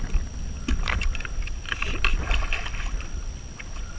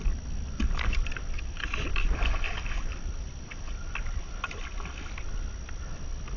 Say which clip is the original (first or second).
second